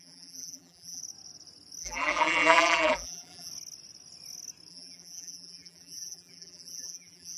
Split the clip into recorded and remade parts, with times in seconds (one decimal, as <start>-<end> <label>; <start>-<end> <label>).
0.0-1.0 remade; 1.0-1.8 recorded; 1.8-3.5 remade; 3.5-4.7 recorded; 4.7-7.4 remade